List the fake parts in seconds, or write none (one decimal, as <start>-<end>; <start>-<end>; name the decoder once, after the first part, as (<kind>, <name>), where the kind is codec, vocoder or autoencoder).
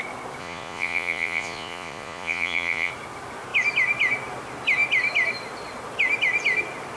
0.4-2.9 (vocoder, Vocos)